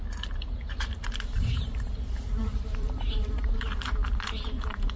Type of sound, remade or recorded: remade